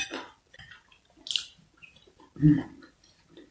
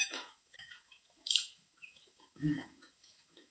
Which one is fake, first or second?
second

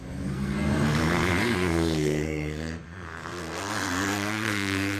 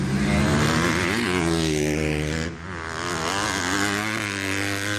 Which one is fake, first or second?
first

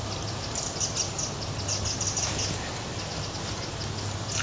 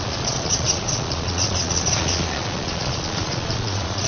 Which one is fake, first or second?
second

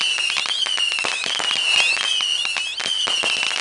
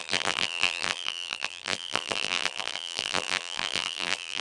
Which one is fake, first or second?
second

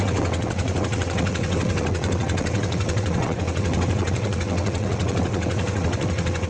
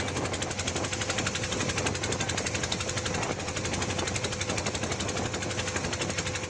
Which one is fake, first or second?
first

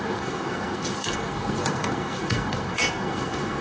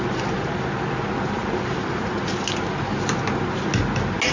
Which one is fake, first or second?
first